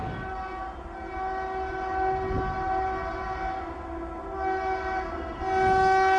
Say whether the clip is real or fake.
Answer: real